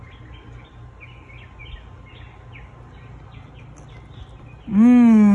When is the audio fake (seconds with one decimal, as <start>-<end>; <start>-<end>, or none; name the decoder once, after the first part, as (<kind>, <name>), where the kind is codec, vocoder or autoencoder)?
none